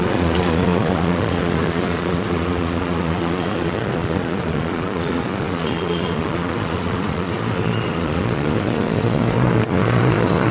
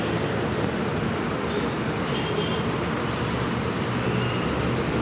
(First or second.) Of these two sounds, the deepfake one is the first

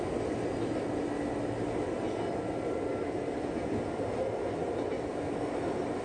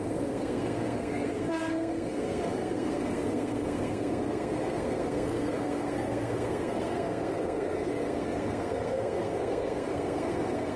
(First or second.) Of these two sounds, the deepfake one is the second